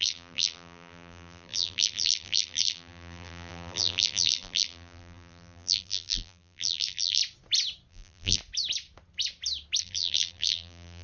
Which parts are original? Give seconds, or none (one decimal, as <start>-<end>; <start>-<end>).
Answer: 7.2-7.9; 8.4-9.8